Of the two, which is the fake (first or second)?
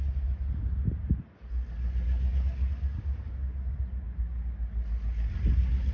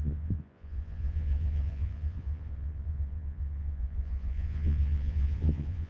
second